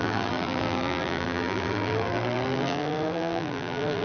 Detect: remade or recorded remade